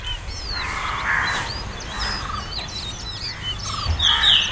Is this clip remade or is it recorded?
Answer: recorded